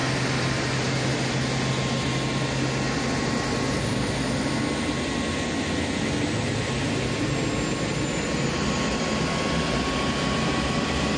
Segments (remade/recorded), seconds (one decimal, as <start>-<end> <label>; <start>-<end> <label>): 0.0-11.2 recorded

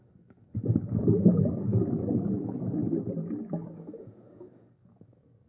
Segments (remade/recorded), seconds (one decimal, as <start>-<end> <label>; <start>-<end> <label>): 0.0-2.8 remade; 2.8-3.4 recorded; 3.4-5.5 remade

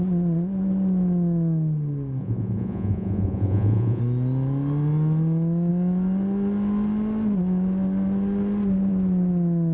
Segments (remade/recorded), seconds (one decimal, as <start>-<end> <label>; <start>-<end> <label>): 0.0-2.2 recorded; 2.2-4.0 remade; 4.0-9.7 recorded

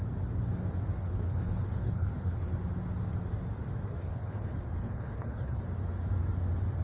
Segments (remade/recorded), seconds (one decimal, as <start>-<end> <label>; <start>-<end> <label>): 0.0-1.0 recorded; 1.0-2.5 remade; 2.5-4.0 recorded; 4.0-5.6 remade; 5.6-6.8 recorded

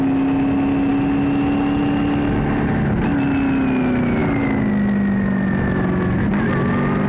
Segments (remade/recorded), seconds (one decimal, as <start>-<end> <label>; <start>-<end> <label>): 0.0-7.1 recorded

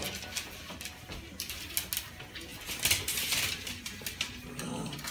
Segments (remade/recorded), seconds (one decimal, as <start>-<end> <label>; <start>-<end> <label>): 0.0-5.1 recorded